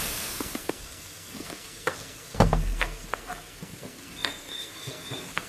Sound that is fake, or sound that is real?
fake